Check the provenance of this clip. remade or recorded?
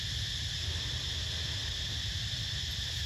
recorded